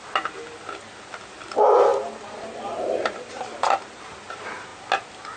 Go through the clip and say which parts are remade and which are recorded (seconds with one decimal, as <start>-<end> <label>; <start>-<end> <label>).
0.0-1.9 recorded; 1.9-4.3 remade; 4.3-5.4 recorded